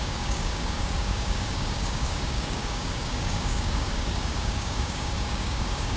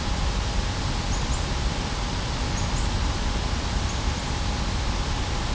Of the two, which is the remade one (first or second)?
first